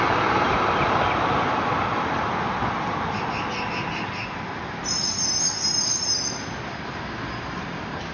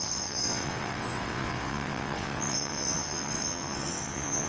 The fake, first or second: second